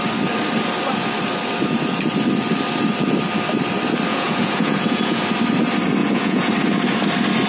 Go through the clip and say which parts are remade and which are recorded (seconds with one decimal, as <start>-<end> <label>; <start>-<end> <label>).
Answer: 0.0-4.1 recorded; 4.1-5.2 remade; 5.2-6.0 recorded; 6.0-6.5 remade; 6.5-7.5 recorded